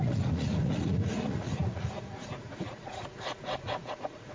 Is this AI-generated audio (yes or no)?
yes